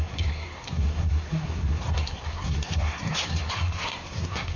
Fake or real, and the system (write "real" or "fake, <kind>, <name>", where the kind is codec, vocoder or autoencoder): fake, codec, SNAC